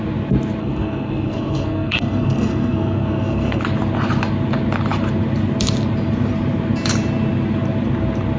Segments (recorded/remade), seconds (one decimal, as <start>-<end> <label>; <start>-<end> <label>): 0.0-0.6 recorded; 0.6-3.6 remade; 3.6-8.4 recorded